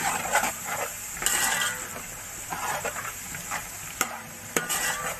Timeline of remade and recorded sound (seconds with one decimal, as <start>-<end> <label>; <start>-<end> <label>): 0.0-0.9 remade; 0.9-2.4 recorded; 2.4-5.2 remade